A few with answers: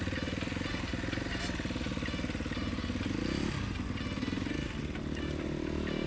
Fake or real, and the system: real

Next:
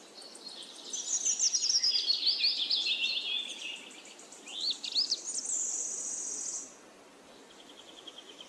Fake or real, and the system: real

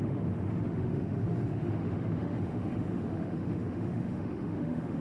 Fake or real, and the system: fake, autoencoder, DAC-VAE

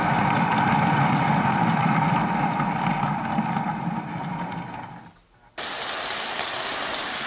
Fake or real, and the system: real